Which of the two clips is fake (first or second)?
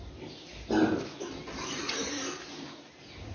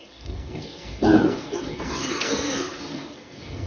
second